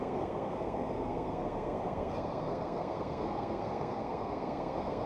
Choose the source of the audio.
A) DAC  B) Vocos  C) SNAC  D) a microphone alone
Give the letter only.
C